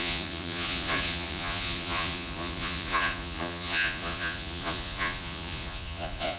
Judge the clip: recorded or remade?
remade